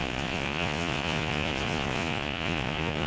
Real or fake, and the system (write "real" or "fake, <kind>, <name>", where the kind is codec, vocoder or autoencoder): fake, vocoder, Vocos